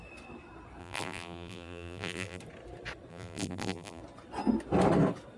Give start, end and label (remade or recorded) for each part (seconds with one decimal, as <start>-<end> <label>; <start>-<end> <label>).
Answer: 0.0-0.8 recorded; 0.8-2.4 remade; 2.4-3.1 recorded; 3.1-4.0 remade; 4.0-5.4 recorded